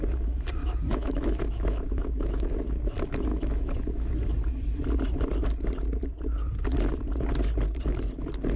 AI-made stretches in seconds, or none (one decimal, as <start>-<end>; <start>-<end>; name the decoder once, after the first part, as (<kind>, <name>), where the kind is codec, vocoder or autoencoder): 0.6-2.5 (autoencoder, DAC-VAE); 3.3-4.1